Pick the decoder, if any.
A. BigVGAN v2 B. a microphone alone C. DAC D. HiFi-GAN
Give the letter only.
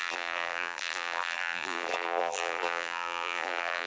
A